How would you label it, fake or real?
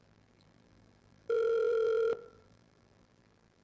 fake